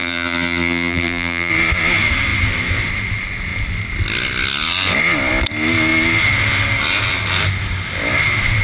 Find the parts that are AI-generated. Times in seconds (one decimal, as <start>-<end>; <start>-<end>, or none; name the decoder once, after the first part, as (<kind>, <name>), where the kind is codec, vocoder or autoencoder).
0.0-1.5 (vocoder, BigVGAN v2)